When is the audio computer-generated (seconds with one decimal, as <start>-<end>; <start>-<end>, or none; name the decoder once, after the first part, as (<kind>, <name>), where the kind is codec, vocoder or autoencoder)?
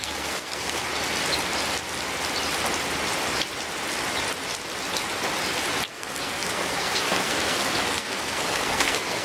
0.0-0.9 (codec, SNAC); 5.9-9.2